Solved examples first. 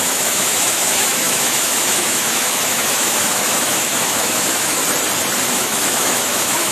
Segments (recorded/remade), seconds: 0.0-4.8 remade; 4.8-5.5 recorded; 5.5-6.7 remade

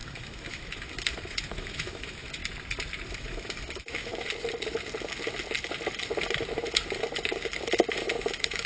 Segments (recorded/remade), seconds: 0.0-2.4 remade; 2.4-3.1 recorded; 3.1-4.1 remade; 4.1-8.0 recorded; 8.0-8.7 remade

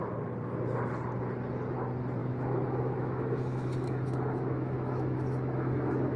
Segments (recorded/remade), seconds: 0.0-2.2 recorded; 2.2-6.2 remade

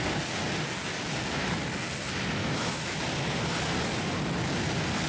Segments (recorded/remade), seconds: 0.0-2.4 recorded; 2.4-3.0 remade; 3.0-5.1 recorded

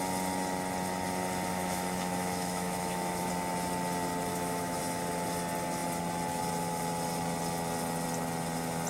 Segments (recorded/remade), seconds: 0.0-1.5 recorded; 1.5-3.3 remade; 3.3-4.3 recorded; 4.3-4.8 remade; 4.8-8.9 recorded

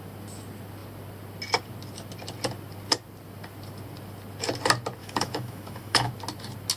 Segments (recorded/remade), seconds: 0.0-5.0 recorded; 5.0-6.1 remade; 6.1-6.8 recorded